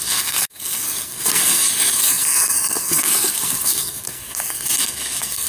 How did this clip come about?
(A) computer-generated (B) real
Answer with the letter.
A